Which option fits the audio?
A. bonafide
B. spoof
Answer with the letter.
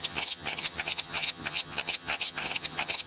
B